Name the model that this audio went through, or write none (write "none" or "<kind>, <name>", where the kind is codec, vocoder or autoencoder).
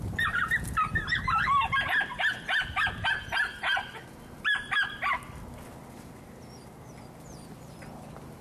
none